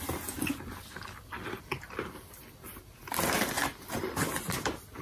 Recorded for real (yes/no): yes